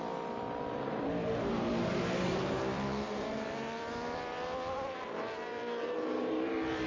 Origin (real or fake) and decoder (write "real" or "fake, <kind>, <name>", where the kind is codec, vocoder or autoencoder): fake, vocoder, BigVGAN v2